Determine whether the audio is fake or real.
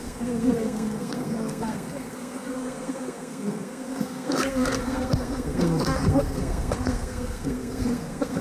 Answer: fake